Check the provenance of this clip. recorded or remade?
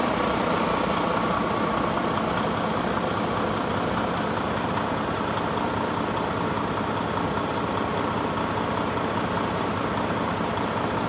recorded